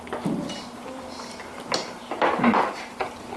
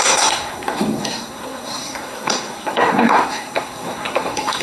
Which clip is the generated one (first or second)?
second